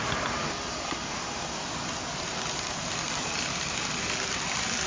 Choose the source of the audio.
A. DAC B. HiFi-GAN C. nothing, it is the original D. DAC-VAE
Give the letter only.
C